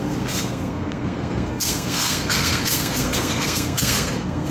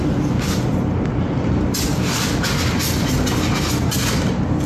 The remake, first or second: first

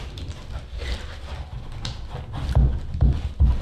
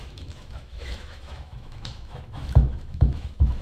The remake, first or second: second